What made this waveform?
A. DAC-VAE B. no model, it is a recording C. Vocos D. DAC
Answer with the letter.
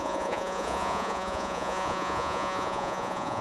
C